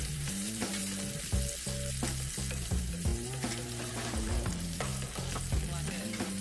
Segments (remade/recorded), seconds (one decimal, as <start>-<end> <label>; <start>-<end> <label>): 0.0-0.8 remade; 0.8-2.7 recorded; 2.7-4.9 remade; 4.9-5.9 recorded; 5.9-6.4 remade